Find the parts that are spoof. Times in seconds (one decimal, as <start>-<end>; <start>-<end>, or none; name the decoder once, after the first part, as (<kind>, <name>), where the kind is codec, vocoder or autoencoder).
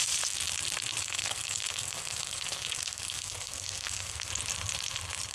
1.0-4.3 (codec, SNAC)